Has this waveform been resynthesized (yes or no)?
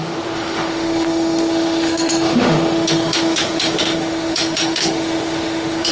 yes